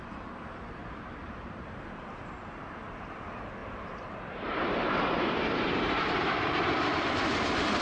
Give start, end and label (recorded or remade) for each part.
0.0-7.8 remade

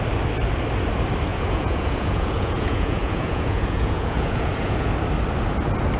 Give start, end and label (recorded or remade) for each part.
0.0-1.3 recorded; 1.3-4.9 remade; 4.9-6.0 recorded